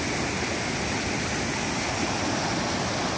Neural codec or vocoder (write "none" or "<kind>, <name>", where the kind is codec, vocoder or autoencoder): none